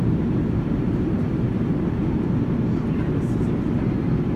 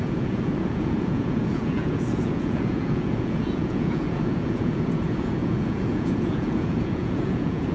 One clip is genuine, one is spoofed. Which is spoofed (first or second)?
second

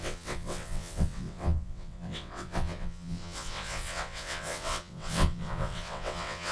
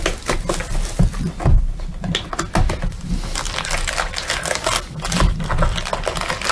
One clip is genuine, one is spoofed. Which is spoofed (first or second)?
first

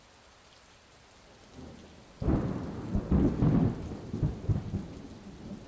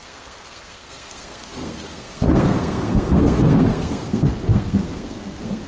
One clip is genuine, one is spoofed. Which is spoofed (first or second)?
second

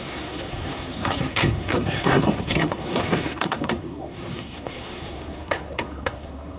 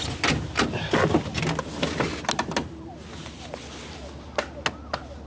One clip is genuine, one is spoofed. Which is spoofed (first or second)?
first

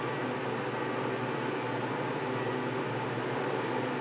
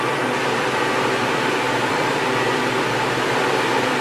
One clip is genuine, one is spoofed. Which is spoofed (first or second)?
second